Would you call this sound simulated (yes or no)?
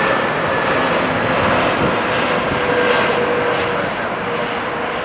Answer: no